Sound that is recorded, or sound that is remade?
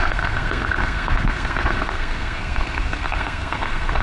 remade